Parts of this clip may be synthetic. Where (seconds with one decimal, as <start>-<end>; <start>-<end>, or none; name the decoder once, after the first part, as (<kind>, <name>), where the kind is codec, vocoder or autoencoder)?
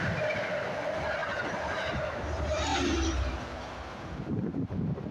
0.0-1.2 (vocoder, BigVGAN v2); 2.1-2.7; 4.3-5.1